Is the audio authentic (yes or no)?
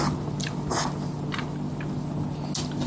yes